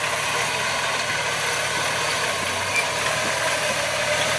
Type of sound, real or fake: real